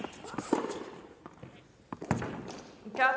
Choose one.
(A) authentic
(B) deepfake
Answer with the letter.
A